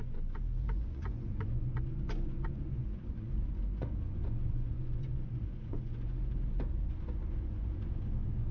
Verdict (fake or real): fake